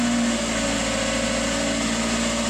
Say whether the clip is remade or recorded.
recorded